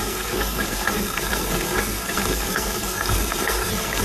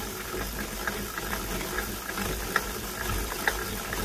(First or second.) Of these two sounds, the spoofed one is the first